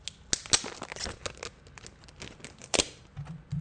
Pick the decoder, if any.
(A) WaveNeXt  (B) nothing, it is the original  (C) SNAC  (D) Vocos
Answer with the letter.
B